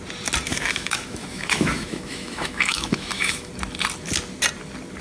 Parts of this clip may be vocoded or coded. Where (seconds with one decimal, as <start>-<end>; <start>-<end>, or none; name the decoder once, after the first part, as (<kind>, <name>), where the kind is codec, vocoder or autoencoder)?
0.5-3.5 (autoencoder, DAC-VAE)